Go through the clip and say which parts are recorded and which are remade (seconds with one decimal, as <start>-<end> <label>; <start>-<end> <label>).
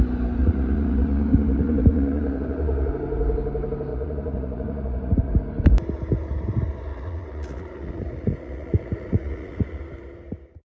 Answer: 0.0-0.4 recorded; 0.4-2.9 remade; 2.9-3.9 recorded; 3.9-5.3 remade; 5.3-6.9 recorded; 6.9-9.8 remade; 9.8-10.7 recorded